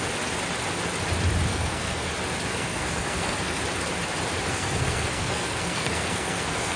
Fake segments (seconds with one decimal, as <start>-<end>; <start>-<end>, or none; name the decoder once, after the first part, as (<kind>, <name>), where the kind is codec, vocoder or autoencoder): 1.5-2.1 (codec, SNAC); 2.5-3.6; 4.5-6.8